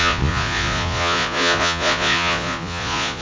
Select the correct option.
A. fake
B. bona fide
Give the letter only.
A